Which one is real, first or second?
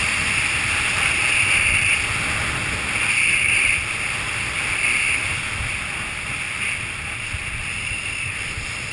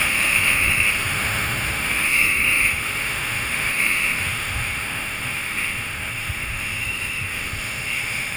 first